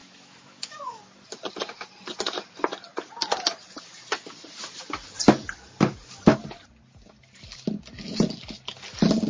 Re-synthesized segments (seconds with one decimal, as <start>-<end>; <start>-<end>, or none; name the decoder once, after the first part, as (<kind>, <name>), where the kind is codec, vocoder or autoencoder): 0.0-1.0 (autoencoder, DAC-VAE)